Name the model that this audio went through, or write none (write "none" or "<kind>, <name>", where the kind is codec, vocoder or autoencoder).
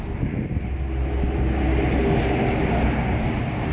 none